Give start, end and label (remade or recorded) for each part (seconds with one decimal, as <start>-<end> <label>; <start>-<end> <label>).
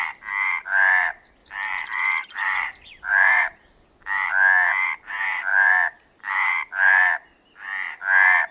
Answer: 0.0-1.4 recorded; 1.4-4.3 remade; 4.3-5.5 recorded; 5.5-6.3 remade; 6.3-8.5 recorded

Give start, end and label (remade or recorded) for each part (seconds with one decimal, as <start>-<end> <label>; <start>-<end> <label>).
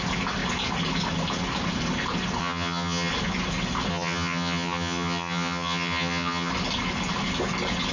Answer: 0.0-2.4 recorded; 2.4-3.1 remade; 3.1-3.9 recorded; 3.9-6.5 remade; 6.5-7.9 recorded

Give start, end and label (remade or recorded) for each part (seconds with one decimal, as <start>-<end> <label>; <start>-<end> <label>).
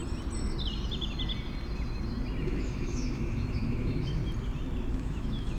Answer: 0.0-2.4 recorded; 2.4-4.2 remade; 4.2-4.9 recorded; 4.9-5.6 remade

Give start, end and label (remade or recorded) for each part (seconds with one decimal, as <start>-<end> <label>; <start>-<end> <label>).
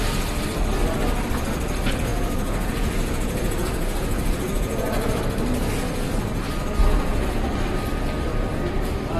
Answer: 0.0-2.1 recorded; 2.1-5.2 remade; 5.2-6.8 recorded; 6.8-7.3 remade; 7.3-9.2 recorded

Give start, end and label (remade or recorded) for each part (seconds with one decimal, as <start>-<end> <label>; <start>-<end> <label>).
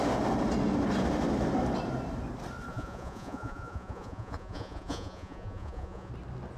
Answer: 0.0-2.7 recorded; 2.7-6.1 remade; 6.1-6.6 recorded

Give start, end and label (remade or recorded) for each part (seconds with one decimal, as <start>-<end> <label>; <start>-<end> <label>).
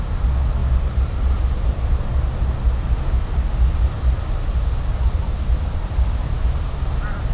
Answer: 0.0-7.3 recorded